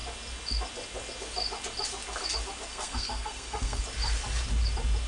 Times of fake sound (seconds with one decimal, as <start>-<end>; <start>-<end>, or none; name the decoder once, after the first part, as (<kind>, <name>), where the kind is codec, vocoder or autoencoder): 2.7-3.8 (codec, SNAC)